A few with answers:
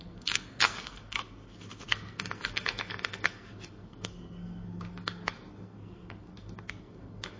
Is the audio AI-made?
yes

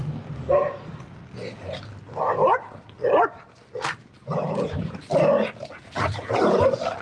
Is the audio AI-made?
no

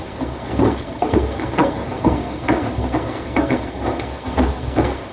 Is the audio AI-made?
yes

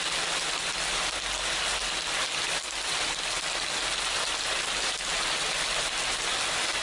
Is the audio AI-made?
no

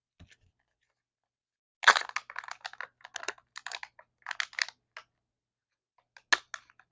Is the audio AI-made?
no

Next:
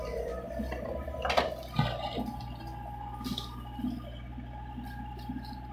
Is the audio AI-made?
no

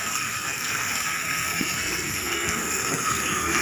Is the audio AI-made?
yes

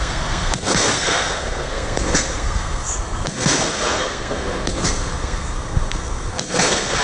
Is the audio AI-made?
yes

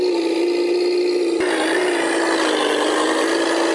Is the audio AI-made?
no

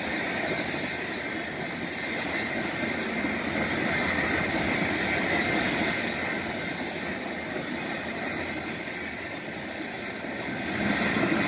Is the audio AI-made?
no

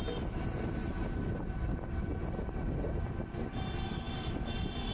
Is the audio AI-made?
no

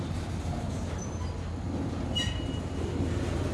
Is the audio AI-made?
no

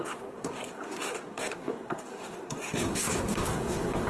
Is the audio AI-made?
yes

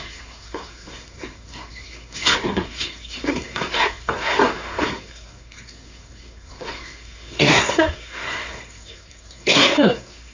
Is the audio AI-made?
yes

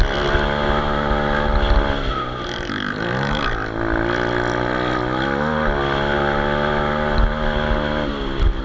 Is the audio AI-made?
no